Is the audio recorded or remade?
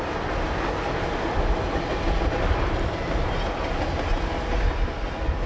recorded